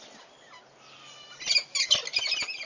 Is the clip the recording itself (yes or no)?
yes